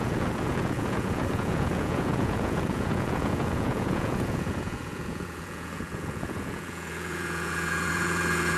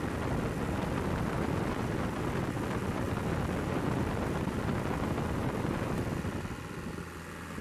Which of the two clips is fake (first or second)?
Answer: first